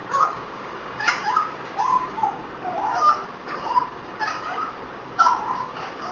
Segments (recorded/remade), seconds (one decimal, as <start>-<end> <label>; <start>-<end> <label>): 0.0-6.1 remade